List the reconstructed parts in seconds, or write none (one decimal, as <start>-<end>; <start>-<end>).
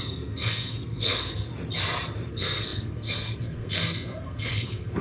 0.0-1.5; 2.3-5.0